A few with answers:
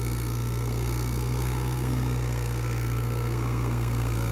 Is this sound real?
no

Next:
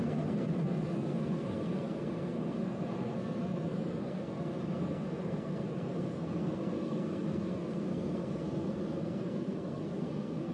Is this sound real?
no